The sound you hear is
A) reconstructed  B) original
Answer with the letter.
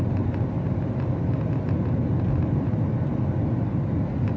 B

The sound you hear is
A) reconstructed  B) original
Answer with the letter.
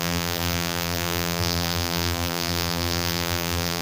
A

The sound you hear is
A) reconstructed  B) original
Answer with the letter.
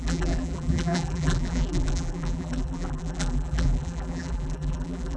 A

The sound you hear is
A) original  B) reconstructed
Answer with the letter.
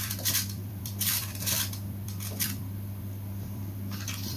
B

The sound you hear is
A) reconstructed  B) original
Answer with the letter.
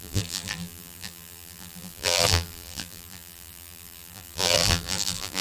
A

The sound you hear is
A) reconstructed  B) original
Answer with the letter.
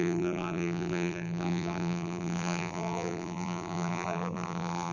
A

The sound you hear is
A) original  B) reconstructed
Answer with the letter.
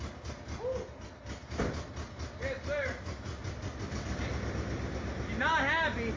A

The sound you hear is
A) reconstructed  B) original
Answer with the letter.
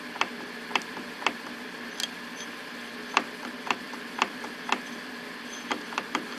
B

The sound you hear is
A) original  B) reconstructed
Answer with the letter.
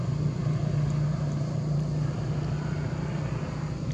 A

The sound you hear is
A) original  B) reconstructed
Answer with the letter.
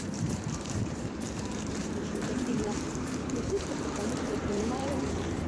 B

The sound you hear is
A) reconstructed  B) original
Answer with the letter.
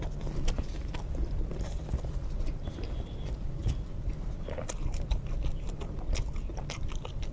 A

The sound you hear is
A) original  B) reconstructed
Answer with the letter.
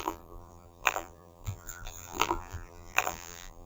B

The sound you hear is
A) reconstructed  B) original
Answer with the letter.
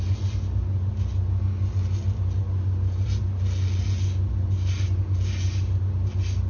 B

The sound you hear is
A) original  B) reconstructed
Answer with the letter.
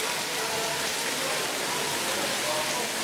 A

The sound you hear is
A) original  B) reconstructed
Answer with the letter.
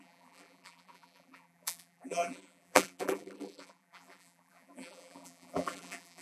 B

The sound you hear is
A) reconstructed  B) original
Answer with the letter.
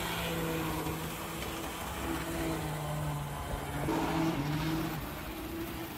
B